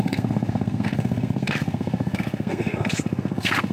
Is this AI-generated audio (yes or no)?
yes